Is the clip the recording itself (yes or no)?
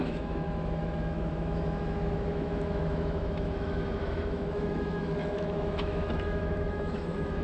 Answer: no